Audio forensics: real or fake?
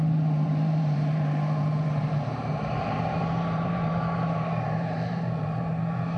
fake